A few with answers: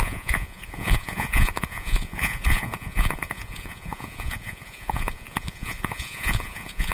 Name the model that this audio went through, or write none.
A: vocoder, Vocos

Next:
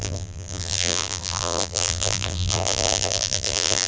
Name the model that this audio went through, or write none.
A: vocoder, BigVGAN v2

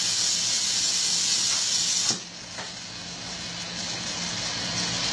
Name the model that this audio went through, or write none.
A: none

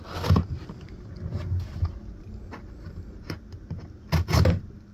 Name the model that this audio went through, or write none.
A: none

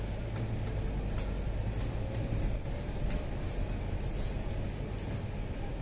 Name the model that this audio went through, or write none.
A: none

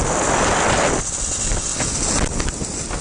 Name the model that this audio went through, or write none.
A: none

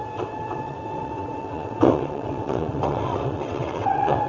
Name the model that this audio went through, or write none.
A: vocoder, WaveNeXt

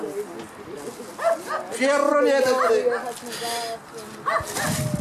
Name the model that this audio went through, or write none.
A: none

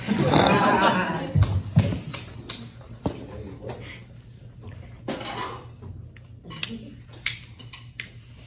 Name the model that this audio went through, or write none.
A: none